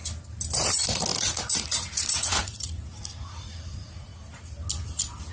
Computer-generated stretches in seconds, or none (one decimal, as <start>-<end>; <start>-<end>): 0.7-4.1